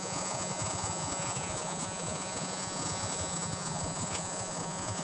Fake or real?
fake